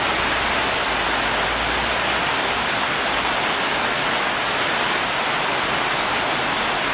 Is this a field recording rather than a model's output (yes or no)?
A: yes